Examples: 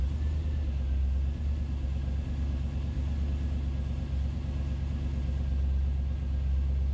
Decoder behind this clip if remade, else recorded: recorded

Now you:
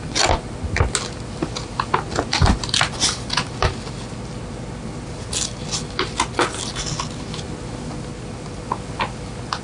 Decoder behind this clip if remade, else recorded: recorded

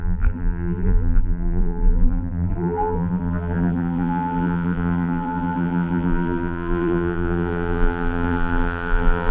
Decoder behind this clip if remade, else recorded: remade, vocoder, BigVGAN v2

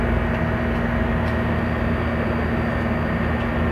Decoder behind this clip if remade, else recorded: recorded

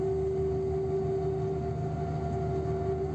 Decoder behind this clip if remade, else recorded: recorded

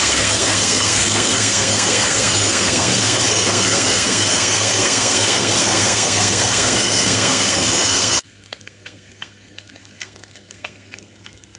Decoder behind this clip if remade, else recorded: remade, codec, SNAC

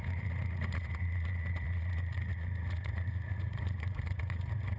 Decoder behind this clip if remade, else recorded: remade, vocoder, Vocos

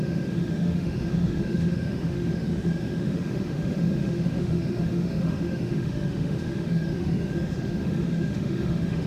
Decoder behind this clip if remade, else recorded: remade, autoencoder, DAC-VAE